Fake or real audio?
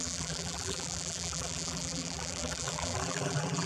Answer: fake